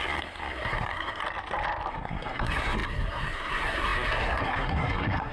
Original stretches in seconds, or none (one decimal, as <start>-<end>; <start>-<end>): 1.2-1.9